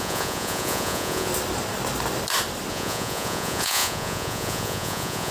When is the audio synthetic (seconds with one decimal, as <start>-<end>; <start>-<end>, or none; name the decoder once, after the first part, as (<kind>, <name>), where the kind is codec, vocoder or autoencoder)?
0.0-1.3 (vocoder, Vocos); 2.7-5.3